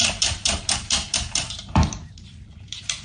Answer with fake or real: fake